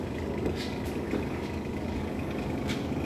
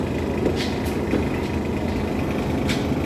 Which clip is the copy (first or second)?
first